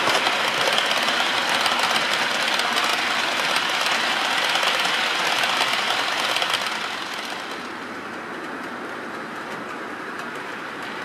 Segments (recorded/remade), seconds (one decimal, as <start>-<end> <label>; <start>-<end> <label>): 0.0-2.9 recorded; 2.9-7.3 remade; 7.3-11.0 recorded